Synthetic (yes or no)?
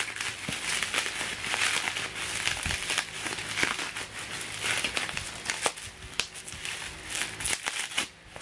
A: no